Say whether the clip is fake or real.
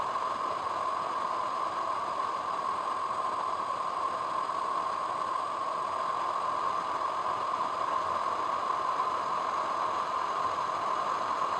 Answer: real